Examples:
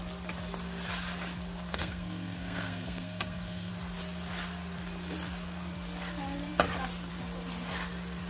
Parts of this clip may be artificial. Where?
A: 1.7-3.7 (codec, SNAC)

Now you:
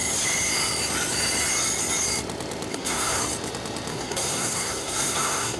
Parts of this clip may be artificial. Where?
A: 2.7-3.2 (codec, SNAC); 3.9-5.6

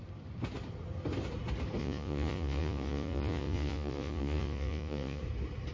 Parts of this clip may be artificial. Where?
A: 1.8-5.2 (vocoder, Vocos)

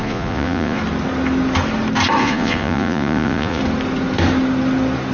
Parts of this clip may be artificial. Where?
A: 0.0-0.8 (vocoder, Vocos); 2.2-3.6

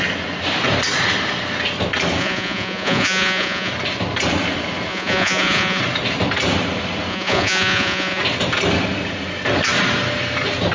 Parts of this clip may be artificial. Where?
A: 2.2-3.7 (vocoder, Vocos); 4.9-5.8; 7.1-8.2

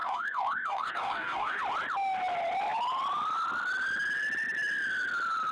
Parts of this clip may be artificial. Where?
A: 0.0-1.6 (codec, DAC)

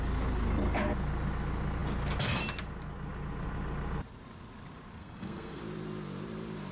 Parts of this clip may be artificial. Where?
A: 5.0-5.6 (codec, SNAC)